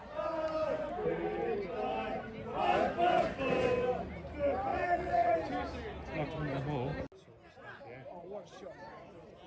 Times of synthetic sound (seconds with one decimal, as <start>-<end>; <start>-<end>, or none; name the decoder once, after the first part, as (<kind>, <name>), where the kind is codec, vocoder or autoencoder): 4.7-5.3 (vocoder, Vocos)